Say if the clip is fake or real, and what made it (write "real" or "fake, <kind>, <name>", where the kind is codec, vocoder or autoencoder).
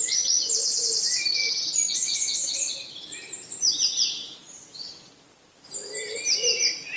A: fake, vocoder, BigVGAN v2